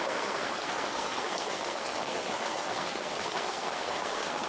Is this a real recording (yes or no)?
no